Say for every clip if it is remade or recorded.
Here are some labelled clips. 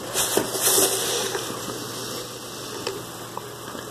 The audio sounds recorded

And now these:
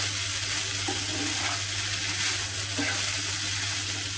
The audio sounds recorded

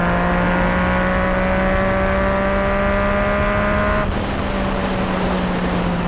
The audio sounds recorded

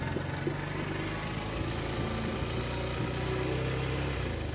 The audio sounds recorded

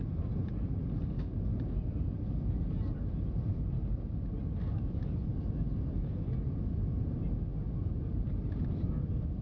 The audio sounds recorded